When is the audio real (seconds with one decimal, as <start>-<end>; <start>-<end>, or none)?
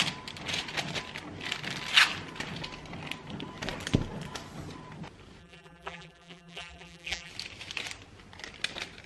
0.0-5.4; 7.3-9.1